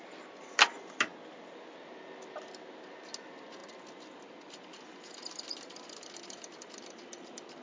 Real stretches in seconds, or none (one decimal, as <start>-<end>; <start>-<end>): 0.0-7.6